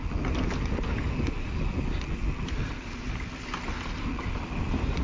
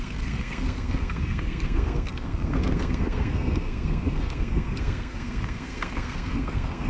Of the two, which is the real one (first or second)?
first